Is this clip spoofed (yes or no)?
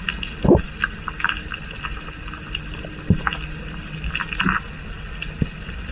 no